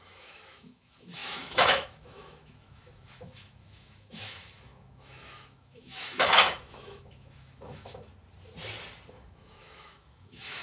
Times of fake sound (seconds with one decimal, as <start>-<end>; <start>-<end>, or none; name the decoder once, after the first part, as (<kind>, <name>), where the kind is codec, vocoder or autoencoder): 0.0-8.1 (autoencoder, DAC-VAE); 9.1-10.6